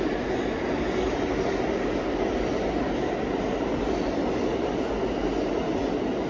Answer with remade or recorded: recorded